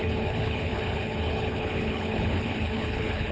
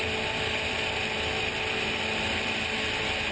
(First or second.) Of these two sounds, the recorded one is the second